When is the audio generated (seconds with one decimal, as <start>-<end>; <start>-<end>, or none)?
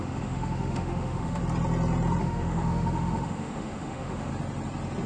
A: 0.0-1.4; 2.2-4.3